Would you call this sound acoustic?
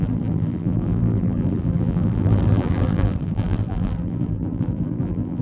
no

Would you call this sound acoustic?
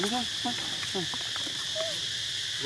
no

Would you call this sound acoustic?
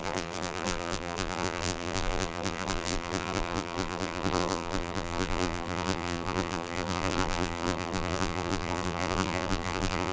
no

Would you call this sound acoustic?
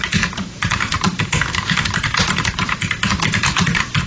no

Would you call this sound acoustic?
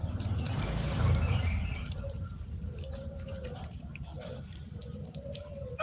no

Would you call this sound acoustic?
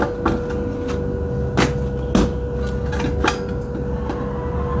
yes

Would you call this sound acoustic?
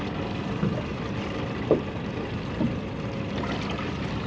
yes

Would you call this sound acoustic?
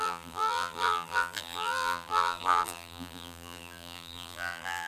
no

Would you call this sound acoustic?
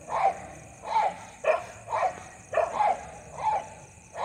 no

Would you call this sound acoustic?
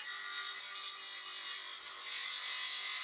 yes